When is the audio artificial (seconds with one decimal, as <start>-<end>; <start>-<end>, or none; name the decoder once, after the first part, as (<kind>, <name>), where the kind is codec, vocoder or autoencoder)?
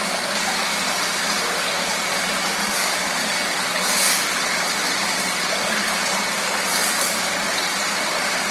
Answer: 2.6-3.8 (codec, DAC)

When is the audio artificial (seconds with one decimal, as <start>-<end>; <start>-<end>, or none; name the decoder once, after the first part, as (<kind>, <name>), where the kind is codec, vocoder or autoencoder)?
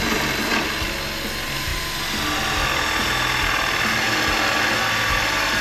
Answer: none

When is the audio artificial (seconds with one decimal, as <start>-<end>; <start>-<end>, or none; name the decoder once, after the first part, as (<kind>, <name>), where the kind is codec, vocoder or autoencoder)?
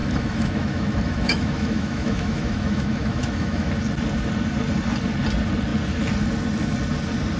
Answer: 0.0-3.7 (autoencoder, DAC-VAE)